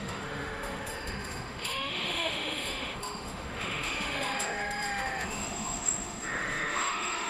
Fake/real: fake